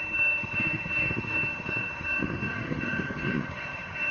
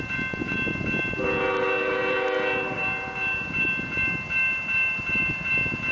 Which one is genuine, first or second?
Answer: second